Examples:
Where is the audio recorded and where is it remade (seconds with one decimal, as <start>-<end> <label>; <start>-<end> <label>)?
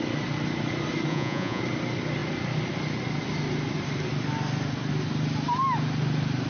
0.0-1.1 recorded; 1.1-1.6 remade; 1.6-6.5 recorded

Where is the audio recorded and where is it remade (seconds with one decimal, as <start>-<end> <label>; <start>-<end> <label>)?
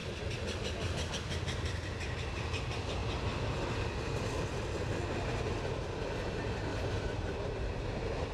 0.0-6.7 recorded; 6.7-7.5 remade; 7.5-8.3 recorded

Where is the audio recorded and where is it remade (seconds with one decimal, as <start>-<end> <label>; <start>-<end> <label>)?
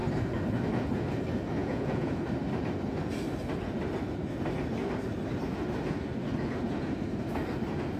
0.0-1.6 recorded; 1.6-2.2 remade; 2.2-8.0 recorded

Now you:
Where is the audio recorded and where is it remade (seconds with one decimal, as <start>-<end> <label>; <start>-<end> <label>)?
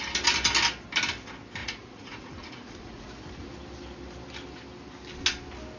0.0-1.6 recorded; 1.6-3.0 remade; 3.0-5.8 recorded